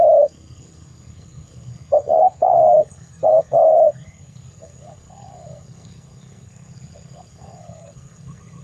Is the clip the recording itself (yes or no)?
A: no